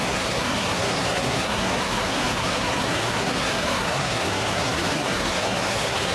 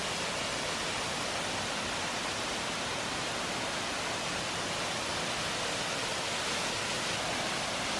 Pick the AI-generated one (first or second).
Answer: first